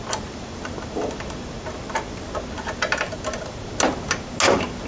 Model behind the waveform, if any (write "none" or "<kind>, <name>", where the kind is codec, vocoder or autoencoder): none